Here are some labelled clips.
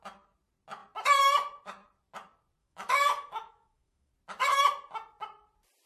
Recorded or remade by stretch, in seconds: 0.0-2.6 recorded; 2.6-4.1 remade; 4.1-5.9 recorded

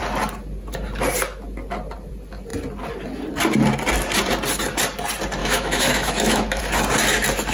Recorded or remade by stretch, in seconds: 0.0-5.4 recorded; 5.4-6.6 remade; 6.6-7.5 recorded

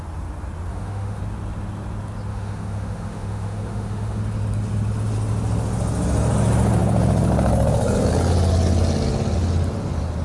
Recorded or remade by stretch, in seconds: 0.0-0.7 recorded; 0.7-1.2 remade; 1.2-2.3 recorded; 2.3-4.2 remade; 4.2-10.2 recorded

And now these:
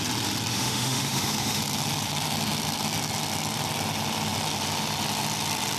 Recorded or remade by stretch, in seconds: 0.0-0.5 recorded; 0.5-1.6 remade; 1.6-5.8 recorded

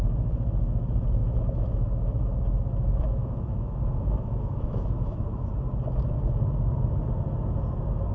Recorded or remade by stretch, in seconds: 0.0-1.2 recorded; 1.2-5.5 remade; 5.5-8.1 recorded

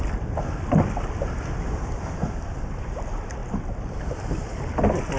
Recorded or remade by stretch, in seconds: 0.0-5.2 recorded

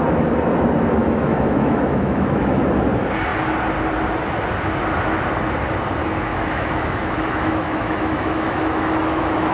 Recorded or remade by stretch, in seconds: 0.0-1.0 recorded; 1.0-2.6 remade; 2.6-6.0 recorded; 6.0-9.5 remade